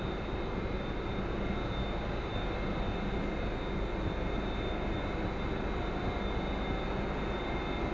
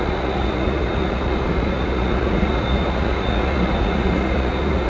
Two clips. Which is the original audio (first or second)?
first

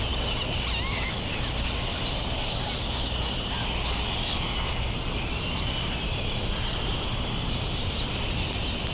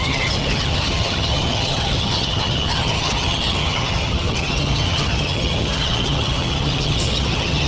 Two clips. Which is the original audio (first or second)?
first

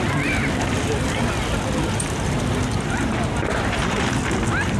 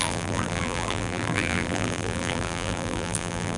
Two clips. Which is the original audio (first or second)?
first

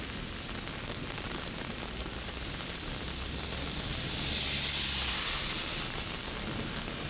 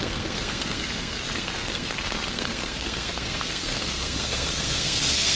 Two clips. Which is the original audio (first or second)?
first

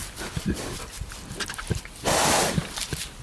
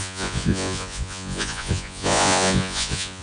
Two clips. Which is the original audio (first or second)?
first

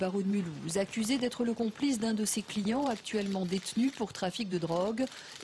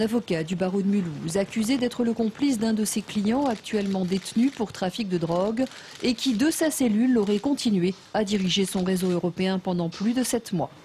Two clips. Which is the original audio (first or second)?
second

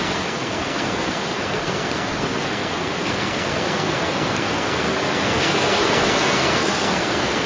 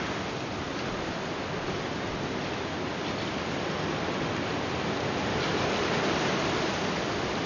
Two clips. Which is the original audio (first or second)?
second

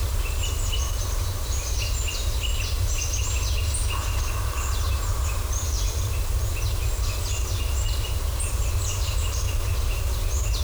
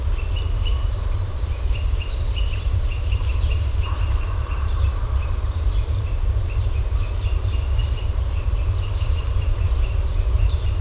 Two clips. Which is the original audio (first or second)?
first